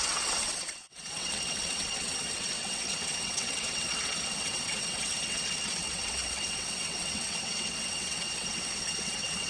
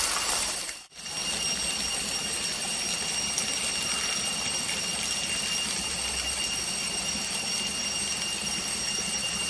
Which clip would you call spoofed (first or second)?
first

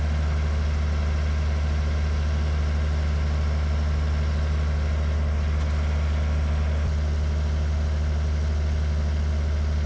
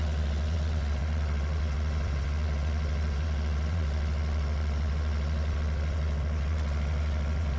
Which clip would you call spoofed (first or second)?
second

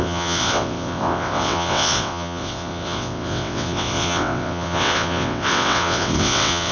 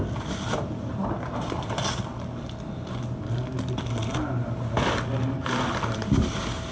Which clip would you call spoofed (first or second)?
first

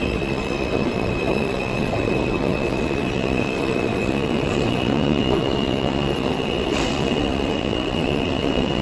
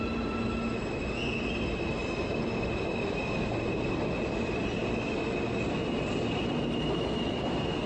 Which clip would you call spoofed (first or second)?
first